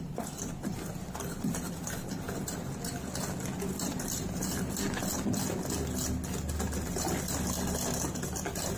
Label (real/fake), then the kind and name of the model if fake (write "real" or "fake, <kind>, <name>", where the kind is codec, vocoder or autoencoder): real